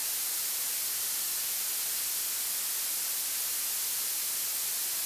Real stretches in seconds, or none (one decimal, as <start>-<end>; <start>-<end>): 0.0-5.1